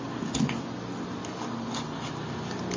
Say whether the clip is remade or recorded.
recorded